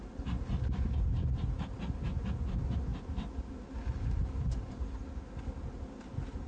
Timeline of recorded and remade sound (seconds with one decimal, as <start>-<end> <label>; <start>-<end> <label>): 0.0-6.5 recorded